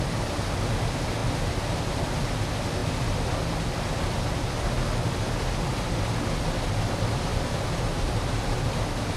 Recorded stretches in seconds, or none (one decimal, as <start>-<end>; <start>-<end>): 0.0-7.3; 8.4-9.2